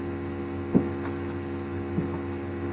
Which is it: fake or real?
real